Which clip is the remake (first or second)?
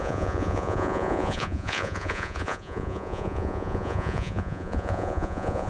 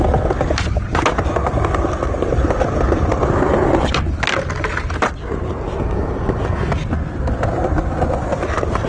first